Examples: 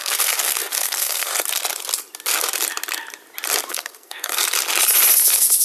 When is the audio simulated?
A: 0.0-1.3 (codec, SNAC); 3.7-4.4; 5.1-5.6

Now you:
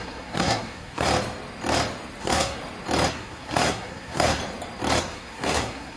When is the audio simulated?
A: 0.0-1.1 (codec, SNAC); 2.2-2.6; 3.1-4.4; 5.0-6.0

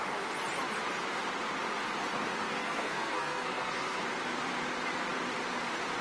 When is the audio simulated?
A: 2.3-4.0 (codec, SNAC)

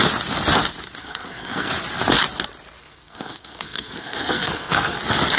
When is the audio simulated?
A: 1.0-1.7 (codec, SNAC); 2.8-5.0